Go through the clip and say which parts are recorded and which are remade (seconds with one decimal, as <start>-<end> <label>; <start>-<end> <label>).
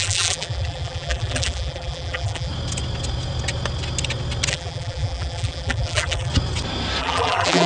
0.0-2.5 remade; 2.5-4.5 recorded; 4.5-6.3 remade; 6.3-7.0 recorded; 7.0-7.7 remade